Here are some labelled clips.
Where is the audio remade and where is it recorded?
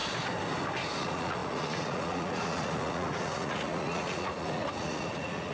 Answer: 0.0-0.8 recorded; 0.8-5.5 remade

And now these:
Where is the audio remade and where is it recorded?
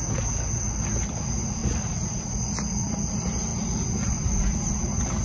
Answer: 0.0-5.2 recorded